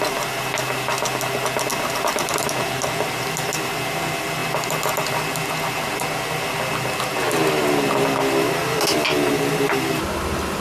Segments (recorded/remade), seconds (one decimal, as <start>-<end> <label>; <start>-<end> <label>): 0.0-10.6 recorded

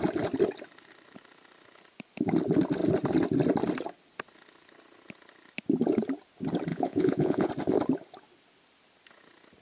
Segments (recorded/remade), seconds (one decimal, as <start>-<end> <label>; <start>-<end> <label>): 0.0-6.7 recorded; 6.7-7.5 remade; 7.5-9.6 recorded